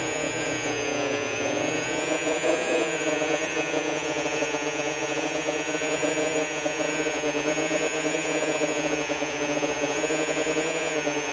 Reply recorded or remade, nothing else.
remade